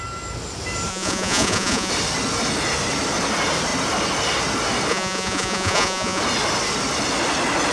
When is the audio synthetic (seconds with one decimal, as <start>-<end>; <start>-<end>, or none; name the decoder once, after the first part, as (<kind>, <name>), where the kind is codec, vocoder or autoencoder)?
0.9-1.9 (vocoder, Vocos); 4.9-6.2